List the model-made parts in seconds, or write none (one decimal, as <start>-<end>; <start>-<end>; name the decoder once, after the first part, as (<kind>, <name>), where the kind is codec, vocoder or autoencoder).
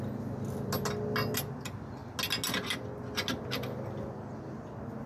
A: none